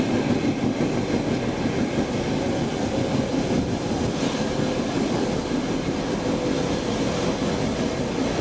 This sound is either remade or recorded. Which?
recorded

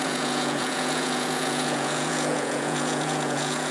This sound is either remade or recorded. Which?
remade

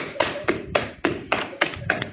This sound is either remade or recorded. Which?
remade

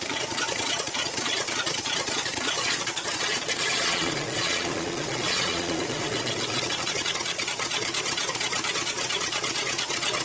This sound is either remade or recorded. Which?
remade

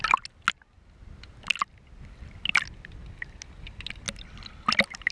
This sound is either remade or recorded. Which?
recorded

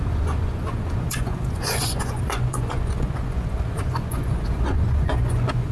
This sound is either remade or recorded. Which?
remade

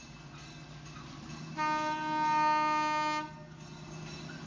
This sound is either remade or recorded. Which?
recorded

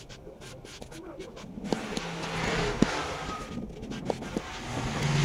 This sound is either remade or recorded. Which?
recorded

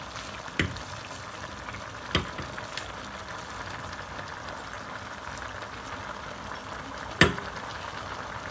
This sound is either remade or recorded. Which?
recorded